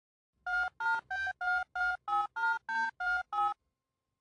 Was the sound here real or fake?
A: real